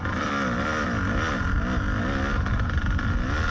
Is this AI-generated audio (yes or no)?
no